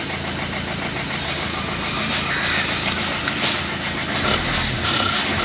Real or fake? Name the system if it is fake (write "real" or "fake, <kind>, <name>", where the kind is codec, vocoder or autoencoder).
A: real